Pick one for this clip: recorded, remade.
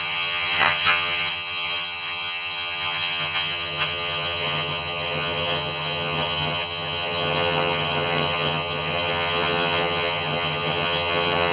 remade